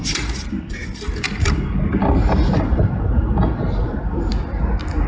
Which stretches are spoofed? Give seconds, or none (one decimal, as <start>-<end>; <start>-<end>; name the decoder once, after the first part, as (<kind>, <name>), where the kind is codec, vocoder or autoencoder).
0.0-4.3 (vocoder, BigVGAN v2)